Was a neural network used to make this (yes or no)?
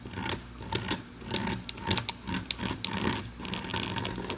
no